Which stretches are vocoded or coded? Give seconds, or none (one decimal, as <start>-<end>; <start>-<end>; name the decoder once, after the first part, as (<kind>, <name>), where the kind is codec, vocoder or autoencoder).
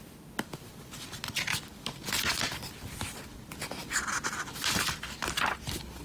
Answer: none